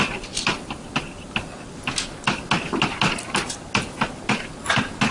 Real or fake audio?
real